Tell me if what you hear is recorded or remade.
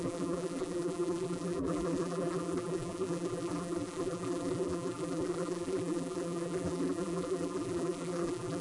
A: remade